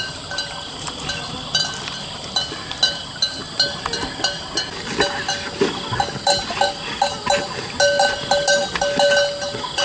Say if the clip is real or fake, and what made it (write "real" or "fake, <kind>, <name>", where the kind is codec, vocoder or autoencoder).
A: real